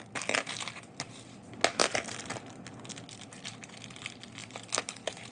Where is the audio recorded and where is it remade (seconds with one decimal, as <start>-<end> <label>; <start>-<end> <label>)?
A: 0.0-5.3 recorded